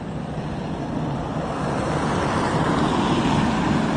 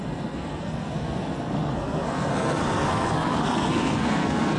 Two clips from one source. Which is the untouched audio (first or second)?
first